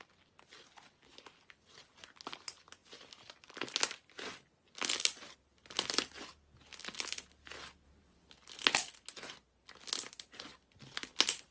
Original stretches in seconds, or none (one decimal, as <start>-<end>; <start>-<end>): 0.0-11.5